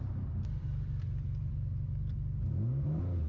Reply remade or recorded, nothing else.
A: recorded